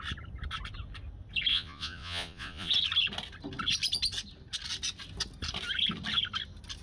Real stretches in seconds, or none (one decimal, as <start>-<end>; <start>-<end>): 0.0-1.5; 2.7-6.8

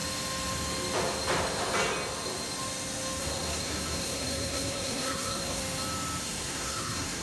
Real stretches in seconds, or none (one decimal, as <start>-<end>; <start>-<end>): 0.0-3.2; 5.6-6.2

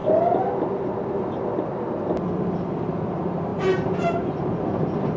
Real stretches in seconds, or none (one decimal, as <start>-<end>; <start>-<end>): 0.0-5.2

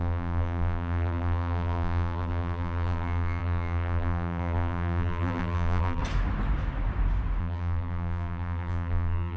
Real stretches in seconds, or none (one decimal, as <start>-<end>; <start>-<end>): 6.0-7.4

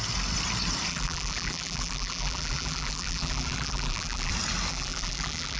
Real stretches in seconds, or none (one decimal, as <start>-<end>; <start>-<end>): 0.0-0.9; 4.3-4.7